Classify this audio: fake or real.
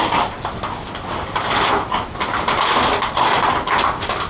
real